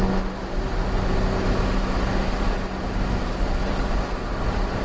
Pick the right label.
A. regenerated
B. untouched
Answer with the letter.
B